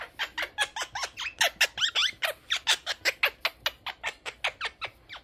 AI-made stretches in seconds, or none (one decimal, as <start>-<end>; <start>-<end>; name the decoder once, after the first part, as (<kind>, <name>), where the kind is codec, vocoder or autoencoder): none